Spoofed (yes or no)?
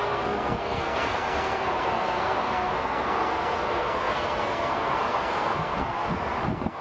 yes